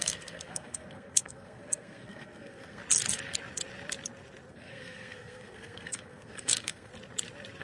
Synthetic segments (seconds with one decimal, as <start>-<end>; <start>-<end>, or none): 0.0-2.8; 4.5-6.9